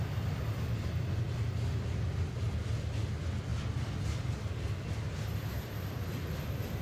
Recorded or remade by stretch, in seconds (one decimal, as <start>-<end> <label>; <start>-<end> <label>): 0.0-6.8 recorded